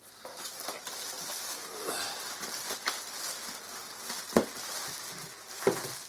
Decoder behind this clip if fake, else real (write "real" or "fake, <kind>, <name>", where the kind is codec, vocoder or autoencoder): real